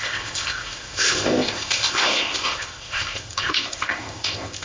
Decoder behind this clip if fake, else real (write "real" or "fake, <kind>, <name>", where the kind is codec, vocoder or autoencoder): fake, codec, ZipCodec